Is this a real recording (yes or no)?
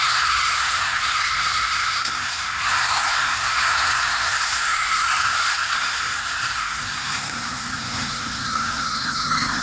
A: no